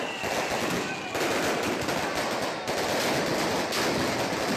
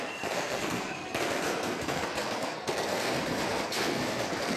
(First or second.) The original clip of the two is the first